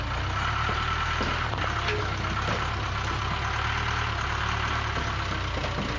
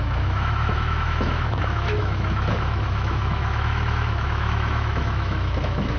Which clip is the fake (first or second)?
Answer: second